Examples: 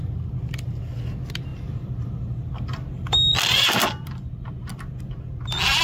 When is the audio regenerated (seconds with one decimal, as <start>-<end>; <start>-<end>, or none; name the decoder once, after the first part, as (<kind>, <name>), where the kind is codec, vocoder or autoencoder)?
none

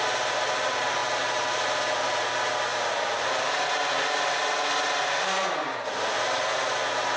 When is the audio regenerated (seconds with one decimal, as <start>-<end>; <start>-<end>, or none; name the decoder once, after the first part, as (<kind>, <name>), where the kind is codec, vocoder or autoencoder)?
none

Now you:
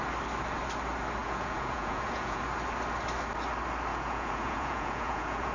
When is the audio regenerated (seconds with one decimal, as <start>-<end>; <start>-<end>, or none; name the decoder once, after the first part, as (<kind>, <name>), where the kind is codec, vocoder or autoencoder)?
1.2-2.4 (vocoder, Vocos); 3.9-5.5

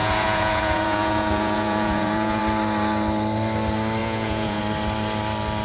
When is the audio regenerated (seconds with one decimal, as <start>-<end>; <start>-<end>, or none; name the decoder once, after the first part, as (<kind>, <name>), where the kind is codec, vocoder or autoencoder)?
0.0-2.4 (vocoder, Vocos); 4.0-4.6